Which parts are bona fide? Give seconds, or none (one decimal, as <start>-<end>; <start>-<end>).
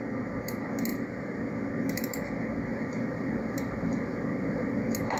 0.0-0.9; 1.4-2.7; 4.8-5.2